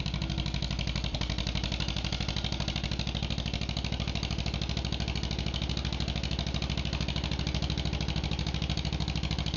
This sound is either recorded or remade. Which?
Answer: recorded